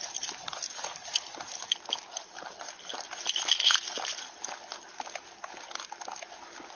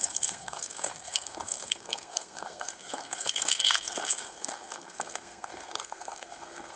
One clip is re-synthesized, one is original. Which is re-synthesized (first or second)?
second